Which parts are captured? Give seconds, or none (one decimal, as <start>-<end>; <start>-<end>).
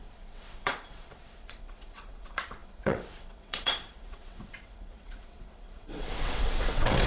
none